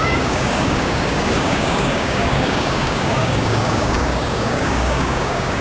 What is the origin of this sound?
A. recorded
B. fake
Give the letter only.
B